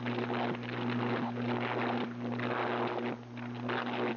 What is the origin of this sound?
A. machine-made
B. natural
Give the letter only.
B